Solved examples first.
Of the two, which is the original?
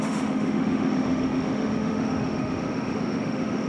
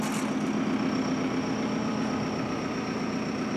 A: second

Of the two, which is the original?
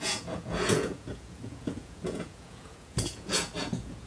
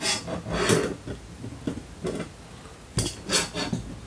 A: second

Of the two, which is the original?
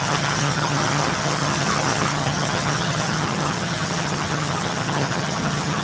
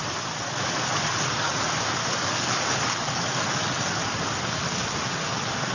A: second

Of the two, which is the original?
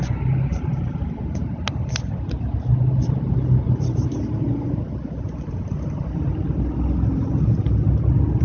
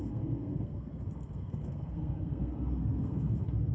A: first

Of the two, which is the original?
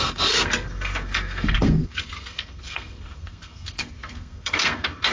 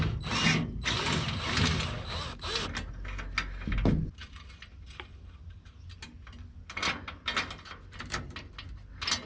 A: second